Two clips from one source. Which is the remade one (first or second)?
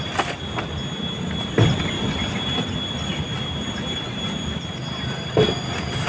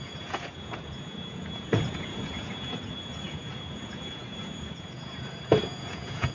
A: second